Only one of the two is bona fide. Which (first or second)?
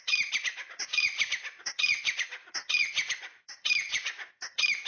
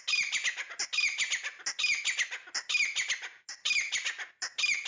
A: second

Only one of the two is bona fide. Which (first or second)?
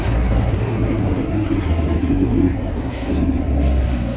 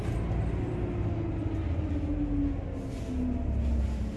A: second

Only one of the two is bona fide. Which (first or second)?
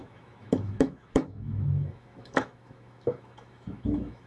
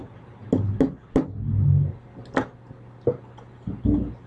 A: second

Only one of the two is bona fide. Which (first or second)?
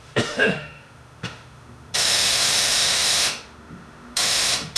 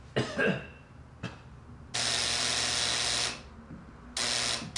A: second